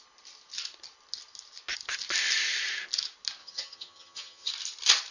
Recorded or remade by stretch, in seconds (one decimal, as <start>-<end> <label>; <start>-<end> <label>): 0.0-3.4 recorded; 3.4-4.5 remade; 4.5-5.1 recorded